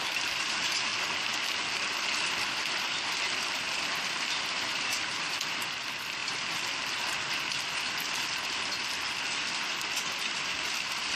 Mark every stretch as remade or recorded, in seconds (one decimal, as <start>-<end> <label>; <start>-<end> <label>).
0.0-0.9 remade; 0.9-3.4 recorded; 3.4-11.2 remade